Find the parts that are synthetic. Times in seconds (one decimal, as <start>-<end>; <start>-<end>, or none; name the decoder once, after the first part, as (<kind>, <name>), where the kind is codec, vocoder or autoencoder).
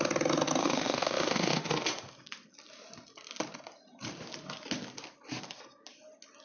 0.6-1.7 (autoencoder, DAC-VAE)